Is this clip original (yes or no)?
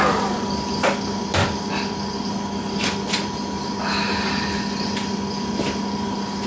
yes